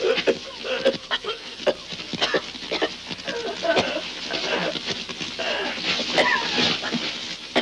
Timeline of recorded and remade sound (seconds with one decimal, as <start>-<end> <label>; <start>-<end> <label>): 0.0-1.0 recorded; 1.0-1.6 remade; 1.6-7.6 recorded